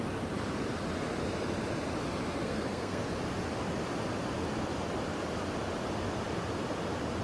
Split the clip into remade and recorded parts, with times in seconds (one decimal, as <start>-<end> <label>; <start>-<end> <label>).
0.0-2.4 recorded; 2.4-3.0 remade; 3.0-7.2 recorded